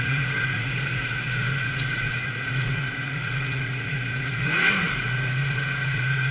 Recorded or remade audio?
remade